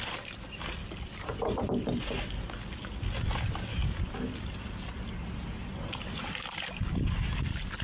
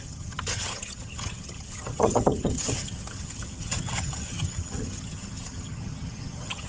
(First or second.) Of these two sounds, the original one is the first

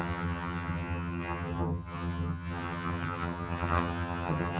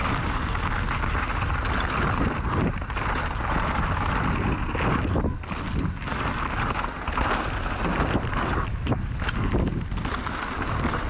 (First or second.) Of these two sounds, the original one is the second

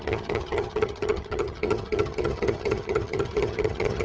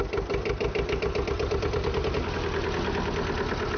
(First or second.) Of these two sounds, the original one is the second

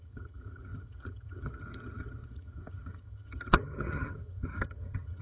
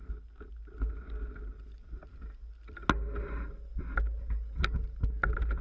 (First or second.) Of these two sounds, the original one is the second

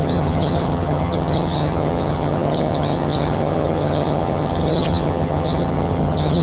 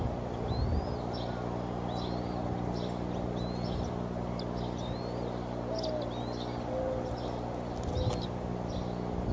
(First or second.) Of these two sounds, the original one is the second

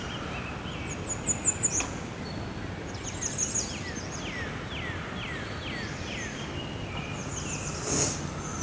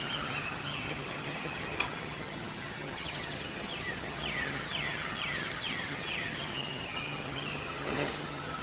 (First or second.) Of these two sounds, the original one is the first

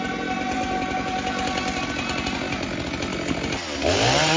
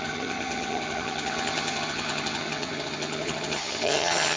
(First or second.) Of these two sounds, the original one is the first